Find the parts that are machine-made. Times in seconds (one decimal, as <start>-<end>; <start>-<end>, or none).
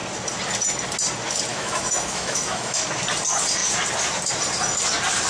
1.5-2.8